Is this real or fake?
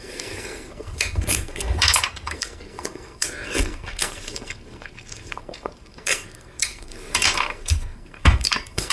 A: fake